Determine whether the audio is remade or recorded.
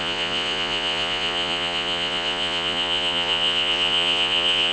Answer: remade